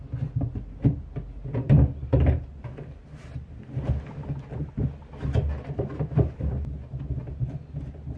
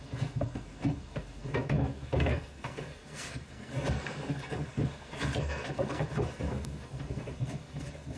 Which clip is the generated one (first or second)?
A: second